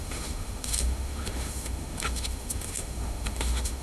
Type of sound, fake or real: fake